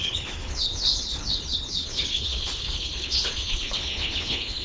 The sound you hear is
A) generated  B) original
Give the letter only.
A